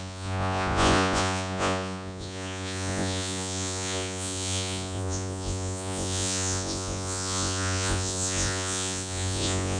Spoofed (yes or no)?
yes